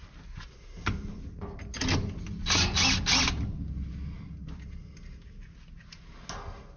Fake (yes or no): no